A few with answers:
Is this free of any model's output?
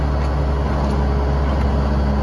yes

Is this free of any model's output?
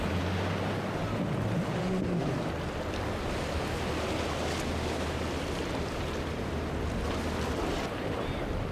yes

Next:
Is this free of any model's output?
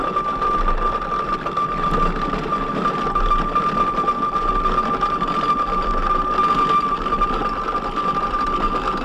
yes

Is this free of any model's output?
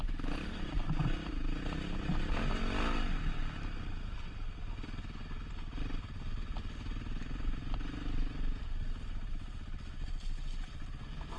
yes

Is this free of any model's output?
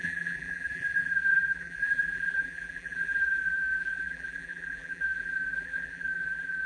no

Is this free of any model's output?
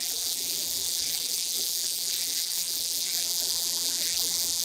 no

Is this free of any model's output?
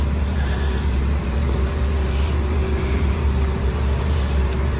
no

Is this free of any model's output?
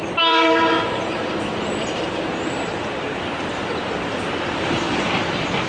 no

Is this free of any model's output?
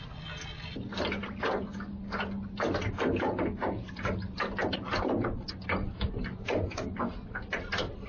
yes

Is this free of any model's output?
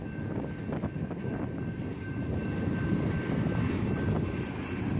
yes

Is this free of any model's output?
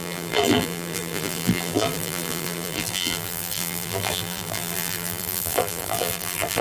no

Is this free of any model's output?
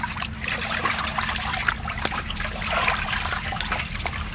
no